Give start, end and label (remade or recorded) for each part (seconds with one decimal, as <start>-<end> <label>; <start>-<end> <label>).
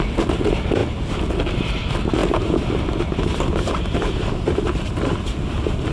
0.0-0.8 remade; 0.8-1.5 recorded; 1.5-5.9 remade